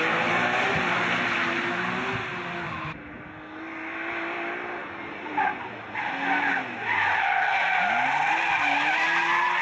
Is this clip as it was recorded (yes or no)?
yes